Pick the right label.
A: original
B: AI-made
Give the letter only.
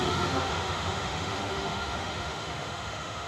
B